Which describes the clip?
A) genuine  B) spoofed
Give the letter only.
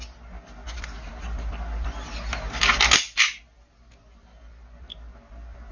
A